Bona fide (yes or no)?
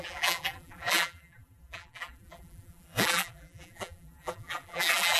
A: no